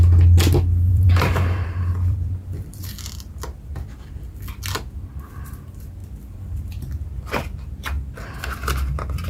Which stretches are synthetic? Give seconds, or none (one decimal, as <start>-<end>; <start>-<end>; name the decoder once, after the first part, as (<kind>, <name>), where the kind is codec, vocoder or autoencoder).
0.9-3.1 (vocoder, BigVGAN v2); 6.0-6.7